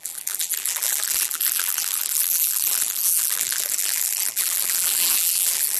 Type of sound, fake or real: fake